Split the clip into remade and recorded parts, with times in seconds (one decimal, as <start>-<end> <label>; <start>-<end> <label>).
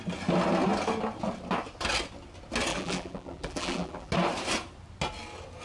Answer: 0.0-2.7 recorded; 2.7-4.1 remade; 4.1-5.6 recorded